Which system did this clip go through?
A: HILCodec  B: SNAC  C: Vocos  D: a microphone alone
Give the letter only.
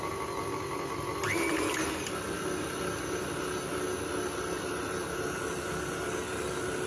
D